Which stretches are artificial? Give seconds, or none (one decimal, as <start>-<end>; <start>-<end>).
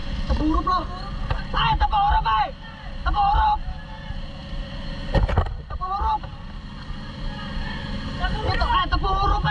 none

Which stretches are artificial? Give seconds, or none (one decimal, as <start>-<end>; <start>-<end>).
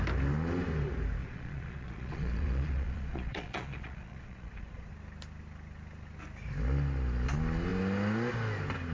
1.2-4.9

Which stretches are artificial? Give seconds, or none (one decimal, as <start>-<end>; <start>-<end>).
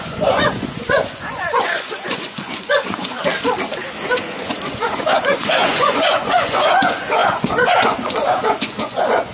0.0-3.2; 4.2-9.3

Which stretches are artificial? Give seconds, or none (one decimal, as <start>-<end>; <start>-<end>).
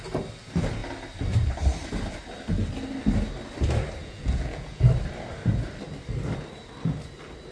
4.0-4.8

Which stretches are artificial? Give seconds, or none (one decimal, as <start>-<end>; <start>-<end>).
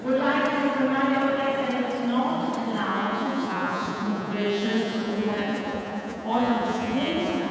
2.9-7.5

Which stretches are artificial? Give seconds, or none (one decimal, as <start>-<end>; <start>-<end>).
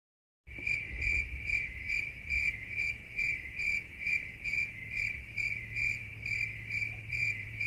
0.9-4.8; 5.6-6.1; 7.1-7.7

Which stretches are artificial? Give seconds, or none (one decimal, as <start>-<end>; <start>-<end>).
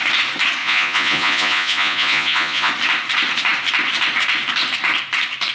0.6-2.7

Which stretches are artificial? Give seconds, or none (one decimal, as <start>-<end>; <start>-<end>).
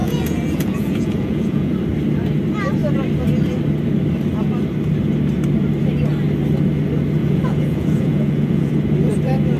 0.0-1.7; 7.2-8.7